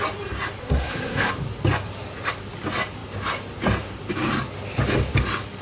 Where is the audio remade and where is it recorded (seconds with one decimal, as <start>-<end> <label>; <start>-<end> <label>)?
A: 0.0-0.6 recorded; 0.6-1.3 remade; 1.3-5.6 recorded